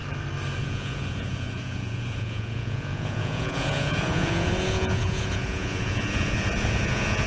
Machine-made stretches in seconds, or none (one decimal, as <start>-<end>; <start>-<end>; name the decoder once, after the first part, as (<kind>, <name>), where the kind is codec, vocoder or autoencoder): 0.6-7.3 (vocoder, Vocos)